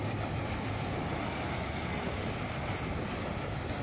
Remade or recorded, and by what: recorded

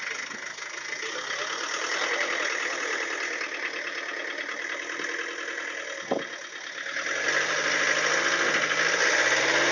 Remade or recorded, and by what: recorded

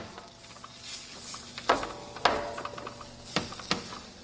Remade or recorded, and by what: recorded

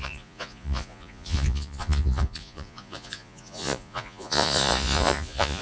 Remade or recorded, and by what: remade, vocoder, Vocos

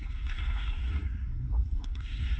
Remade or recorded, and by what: remade, codec, SNAC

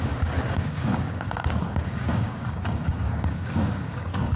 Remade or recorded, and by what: remade, codec, DAC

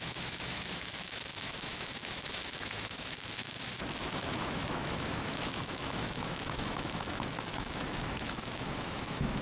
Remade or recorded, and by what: remade, autoencoder, DAC-VAE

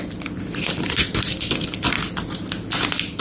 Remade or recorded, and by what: recorded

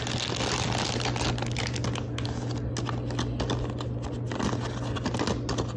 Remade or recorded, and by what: recorded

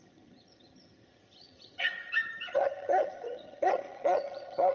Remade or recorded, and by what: remade, vocoder, HiFi-GAN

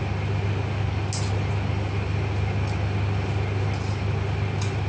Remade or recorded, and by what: recorded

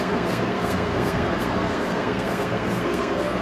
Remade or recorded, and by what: remade, codec, SNAC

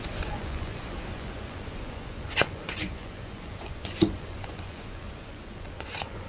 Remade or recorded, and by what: remade, vocoder, Vocos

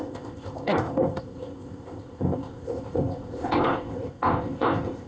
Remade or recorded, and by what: remade, codec, ZipCodec